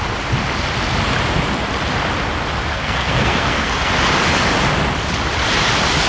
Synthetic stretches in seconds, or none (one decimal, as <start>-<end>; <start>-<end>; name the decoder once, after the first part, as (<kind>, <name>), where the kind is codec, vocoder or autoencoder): 2.7-3.9 (codec, SNAC)